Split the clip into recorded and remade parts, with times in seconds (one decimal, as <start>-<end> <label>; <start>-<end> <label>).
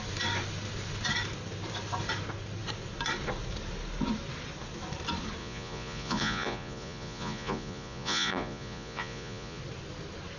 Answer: 0.0-5.4 recorded; 5.4-9.6 remade; 9.6-10.4 recorded